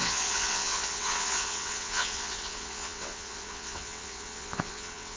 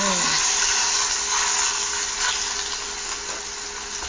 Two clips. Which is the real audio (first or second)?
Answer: second